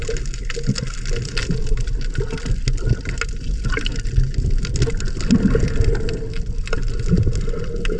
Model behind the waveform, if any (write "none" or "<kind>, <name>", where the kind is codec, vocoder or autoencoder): none